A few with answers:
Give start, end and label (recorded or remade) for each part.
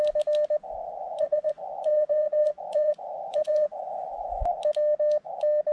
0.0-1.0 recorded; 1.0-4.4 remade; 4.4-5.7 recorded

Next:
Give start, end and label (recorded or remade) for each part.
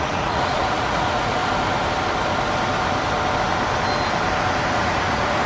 0.0-1.4 remade; 1.4-4.7 recorded; 4.7-5.5 remade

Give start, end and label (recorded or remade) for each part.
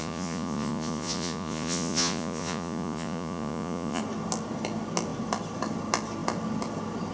0.0-4.0 remade; 4.0-7.1 recorded